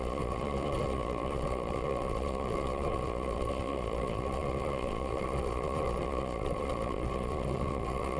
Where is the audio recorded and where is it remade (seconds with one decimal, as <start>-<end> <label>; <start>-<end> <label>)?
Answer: 0.0-8.2 remade

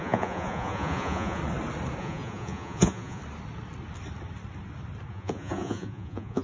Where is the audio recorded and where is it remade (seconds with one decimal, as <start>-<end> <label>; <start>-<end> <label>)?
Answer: 0.0-1.4 remade; 1.4-2.0 recorded; 2.0-3.2 remade; 3.2-5.1 recorded; 5.1-6.4 remade

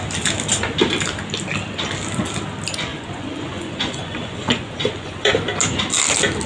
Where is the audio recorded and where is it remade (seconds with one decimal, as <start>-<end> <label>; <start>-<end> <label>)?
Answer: 0.0-2.9 recorded; 2.9-5.3 remade; 5.3-6.5 recorded

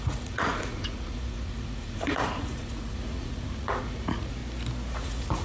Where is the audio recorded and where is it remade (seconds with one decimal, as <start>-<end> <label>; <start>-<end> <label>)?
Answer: 0.0-4.4 remade; 4.4-4.9 recorded; 4.9-5.4 remade

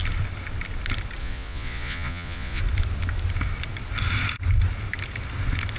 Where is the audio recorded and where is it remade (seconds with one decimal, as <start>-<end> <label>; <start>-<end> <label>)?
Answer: 0.0-1.2 recorded; 1.2-2.6 remade; 2.6-5.8 recorded

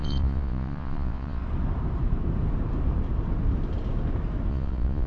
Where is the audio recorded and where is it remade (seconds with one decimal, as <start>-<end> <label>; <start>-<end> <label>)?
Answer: 0.0-1.4 remade; 1.4-4.5 recorded; 4.5-5.1 remade

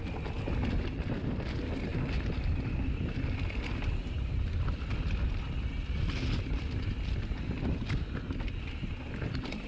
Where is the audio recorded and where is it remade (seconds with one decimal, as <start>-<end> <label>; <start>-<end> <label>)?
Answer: 0.0-9.7 recorded